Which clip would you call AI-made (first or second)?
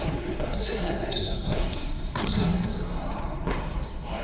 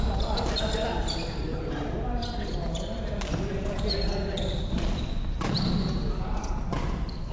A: first